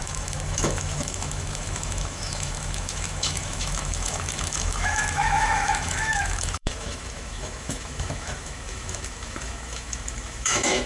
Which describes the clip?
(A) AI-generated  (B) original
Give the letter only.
A